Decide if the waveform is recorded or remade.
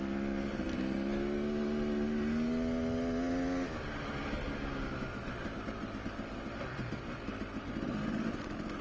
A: recorded